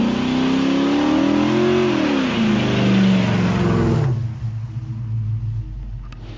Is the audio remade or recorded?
recorded